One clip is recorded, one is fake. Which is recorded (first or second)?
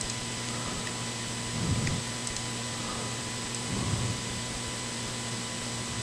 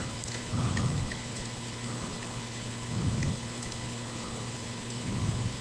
first